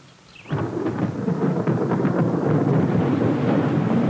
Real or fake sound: real